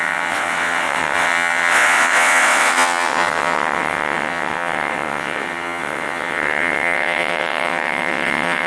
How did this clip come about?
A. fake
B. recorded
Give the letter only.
A